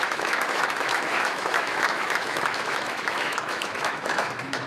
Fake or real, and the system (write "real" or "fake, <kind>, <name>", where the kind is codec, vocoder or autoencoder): fake, autoencoder, DAC-VAE